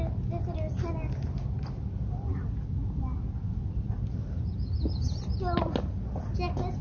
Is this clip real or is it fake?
real